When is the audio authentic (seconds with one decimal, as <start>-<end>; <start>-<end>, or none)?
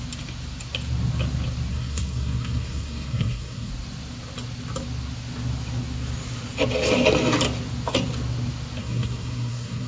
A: 0.0-1.7; 3.7-8.8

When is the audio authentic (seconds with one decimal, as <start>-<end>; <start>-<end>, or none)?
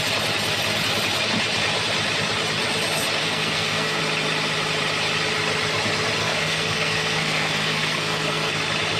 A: 0.0-3.2; 4.0-6.2; 8.5-9.0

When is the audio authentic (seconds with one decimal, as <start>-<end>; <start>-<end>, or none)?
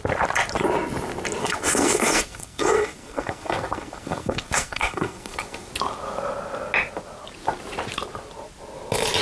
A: 0.0-1.4; 5.7-9.2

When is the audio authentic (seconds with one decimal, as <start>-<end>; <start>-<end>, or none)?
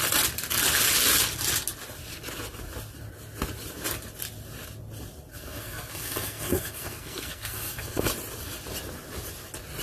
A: 0.0-5.3; 8.1-9.8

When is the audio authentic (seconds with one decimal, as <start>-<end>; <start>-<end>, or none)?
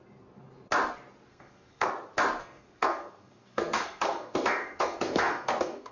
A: 0.0-1.3; 1.9-2.4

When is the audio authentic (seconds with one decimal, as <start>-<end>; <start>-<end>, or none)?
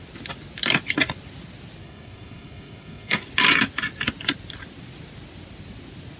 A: 0.0-1.8; 3.2-6.2